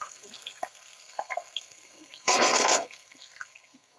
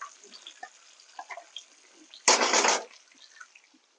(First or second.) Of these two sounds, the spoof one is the first